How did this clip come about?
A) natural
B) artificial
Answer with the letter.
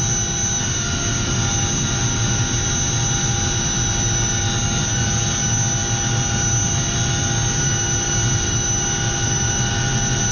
A